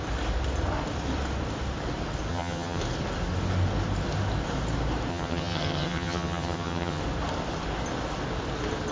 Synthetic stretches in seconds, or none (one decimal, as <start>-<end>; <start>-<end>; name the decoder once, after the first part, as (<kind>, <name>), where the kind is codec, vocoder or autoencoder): 2.3-2.8 (vocoder, HiFi-GAN); 5.1-7.0